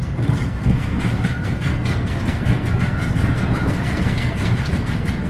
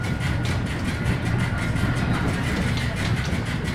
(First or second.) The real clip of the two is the second